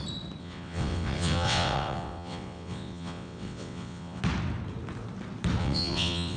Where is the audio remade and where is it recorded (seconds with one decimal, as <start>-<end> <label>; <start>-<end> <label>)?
0.0-0.4 recorded; 0.4-4.2 remade; 4.2-5.6 recorded; 5.6-6.4 remade